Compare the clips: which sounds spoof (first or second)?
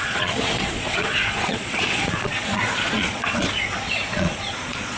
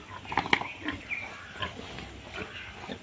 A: first